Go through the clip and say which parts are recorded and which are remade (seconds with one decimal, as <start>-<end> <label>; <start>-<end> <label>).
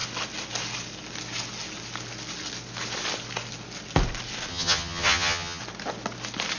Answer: 0.0-4.5 recorded; 4.5-5.6 remade; 5.6-6.6 recorded